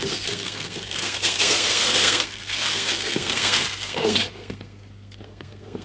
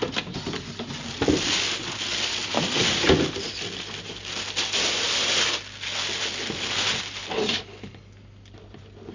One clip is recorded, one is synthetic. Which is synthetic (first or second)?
first